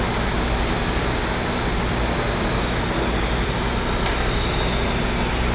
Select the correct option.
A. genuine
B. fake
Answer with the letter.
A